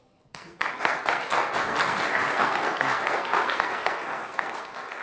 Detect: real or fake fake